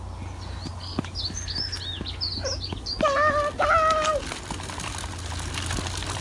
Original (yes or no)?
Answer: yes